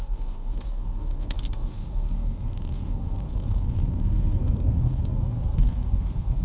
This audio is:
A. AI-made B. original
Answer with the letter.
A